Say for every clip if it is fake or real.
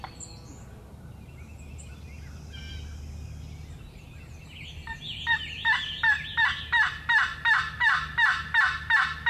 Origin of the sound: real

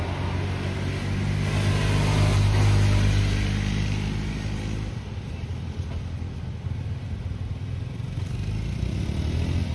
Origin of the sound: real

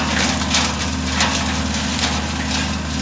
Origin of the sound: real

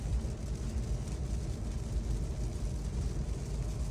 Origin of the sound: real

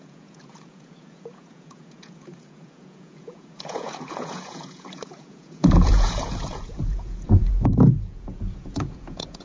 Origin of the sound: fake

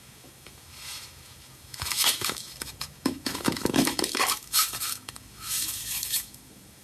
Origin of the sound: fake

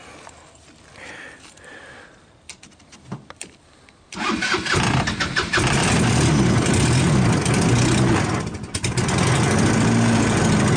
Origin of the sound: real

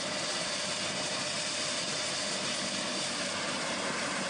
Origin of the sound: real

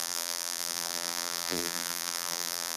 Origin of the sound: fake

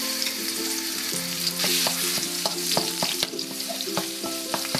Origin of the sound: fake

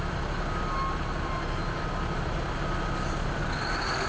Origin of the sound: real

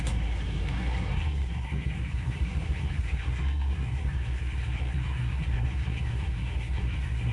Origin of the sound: fake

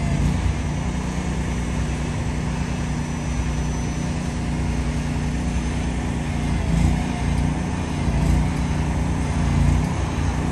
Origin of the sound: real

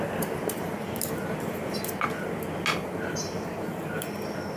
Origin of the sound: real